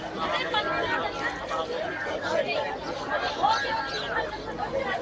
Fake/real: real